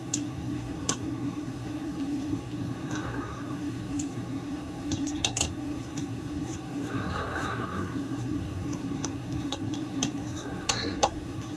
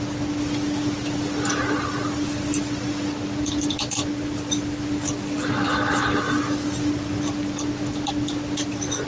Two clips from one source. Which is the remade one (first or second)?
first